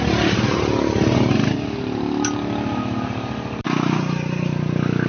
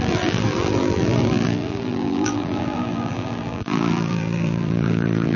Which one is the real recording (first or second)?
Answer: first